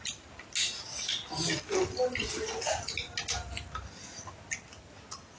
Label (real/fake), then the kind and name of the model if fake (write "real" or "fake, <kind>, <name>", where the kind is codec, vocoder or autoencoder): real